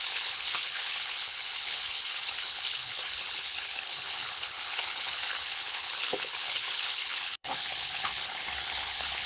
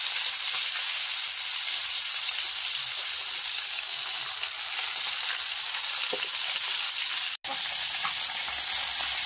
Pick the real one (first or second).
second